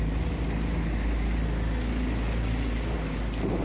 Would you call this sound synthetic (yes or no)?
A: no